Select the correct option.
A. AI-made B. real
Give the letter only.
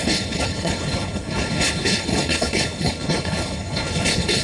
A